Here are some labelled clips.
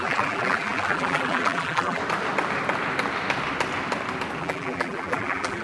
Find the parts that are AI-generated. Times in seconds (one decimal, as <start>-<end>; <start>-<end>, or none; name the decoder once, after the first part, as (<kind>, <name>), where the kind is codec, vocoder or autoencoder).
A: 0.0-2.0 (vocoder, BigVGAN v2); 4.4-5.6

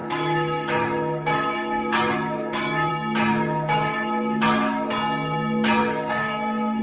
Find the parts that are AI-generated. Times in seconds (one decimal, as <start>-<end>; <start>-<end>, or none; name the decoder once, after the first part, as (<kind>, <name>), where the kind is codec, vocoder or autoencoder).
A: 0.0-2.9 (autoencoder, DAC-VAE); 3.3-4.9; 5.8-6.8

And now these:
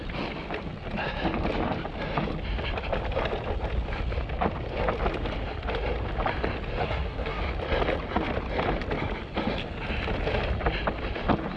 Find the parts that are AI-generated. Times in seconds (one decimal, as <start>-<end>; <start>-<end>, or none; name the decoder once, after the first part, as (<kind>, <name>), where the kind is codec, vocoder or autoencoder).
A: 6.8-7.4 (codec, SNAC)